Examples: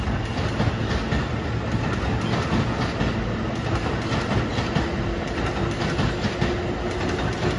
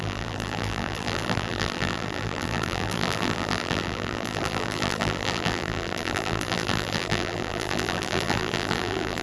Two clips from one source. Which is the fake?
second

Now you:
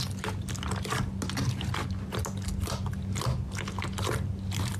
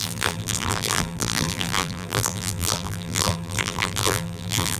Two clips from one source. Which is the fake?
second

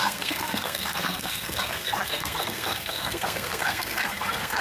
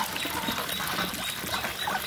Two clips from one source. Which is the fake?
first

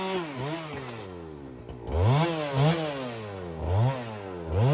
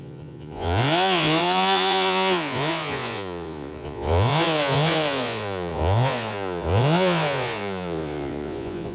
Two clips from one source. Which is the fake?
second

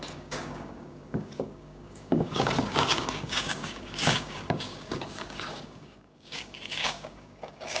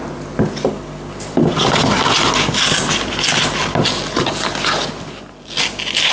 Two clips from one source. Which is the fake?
first